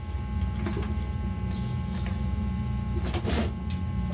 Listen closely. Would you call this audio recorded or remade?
recorded